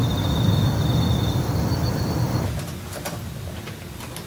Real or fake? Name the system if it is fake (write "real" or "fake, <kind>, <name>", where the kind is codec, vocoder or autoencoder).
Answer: real